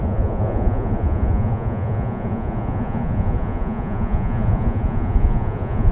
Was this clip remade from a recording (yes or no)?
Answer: yes